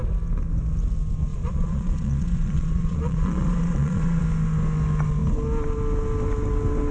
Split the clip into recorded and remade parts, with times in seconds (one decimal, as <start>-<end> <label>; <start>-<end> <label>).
0.0-1.3 recorded; 1.3-4.2 remade; 4.2-6.9 recorded